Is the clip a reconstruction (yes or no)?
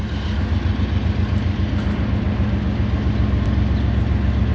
no